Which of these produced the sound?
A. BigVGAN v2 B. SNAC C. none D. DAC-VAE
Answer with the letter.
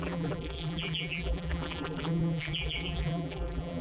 A